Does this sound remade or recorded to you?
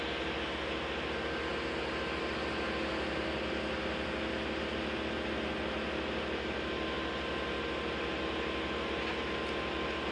recorded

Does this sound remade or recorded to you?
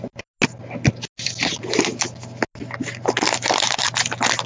recorded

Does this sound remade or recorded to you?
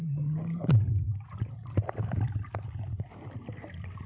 recorded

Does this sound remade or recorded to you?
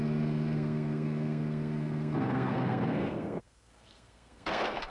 remade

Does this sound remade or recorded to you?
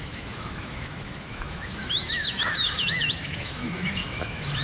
remade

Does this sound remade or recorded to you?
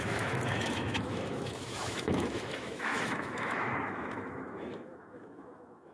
remade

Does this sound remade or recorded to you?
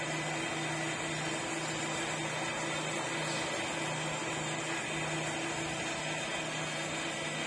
recorded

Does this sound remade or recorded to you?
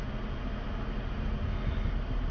recorded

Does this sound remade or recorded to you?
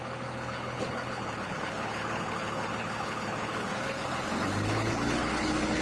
remade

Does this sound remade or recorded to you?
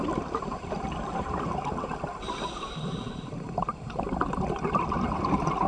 remade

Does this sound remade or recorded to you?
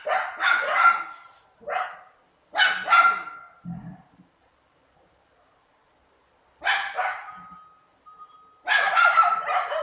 recorded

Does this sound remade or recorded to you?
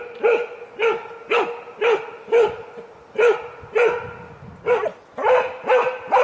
recorded